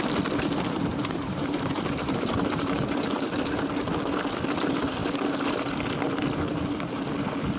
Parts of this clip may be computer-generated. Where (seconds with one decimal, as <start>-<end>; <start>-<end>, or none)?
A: 0.9-3.6